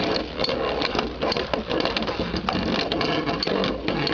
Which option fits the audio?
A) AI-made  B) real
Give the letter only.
B